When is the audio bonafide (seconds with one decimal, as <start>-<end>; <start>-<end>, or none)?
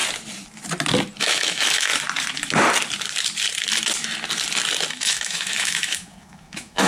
0.0-1.2; 1.9-4.9